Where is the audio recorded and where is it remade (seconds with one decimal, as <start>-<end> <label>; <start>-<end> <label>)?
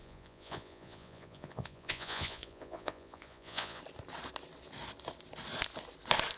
0.0-3.8 remade; 3.8-6.4 recorded